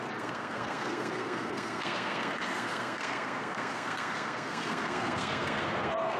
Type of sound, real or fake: fake